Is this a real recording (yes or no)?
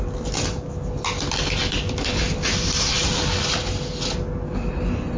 yes